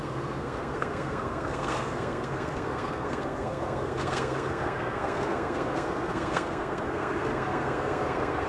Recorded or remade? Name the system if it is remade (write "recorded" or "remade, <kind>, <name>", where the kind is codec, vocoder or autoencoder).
remade, codec, SNAC